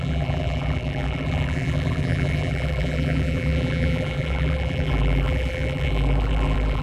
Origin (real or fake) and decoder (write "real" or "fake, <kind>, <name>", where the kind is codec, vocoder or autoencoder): fake, vocoder, BigVGAN v2